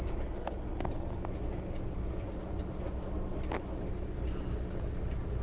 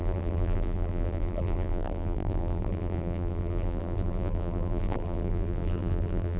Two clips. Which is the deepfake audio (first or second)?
second